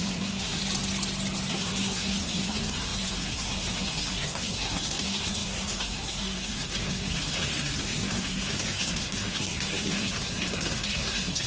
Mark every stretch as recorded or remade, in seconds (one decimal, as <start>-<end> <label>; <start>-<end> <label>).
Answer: 0.0-0.6 remade; 0.6-1.5 recorded; 1.5-11.5 remade